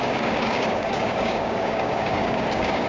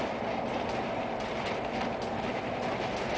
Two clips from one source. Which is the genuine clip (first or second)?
second